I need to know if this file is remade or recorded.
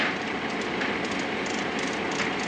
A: recorded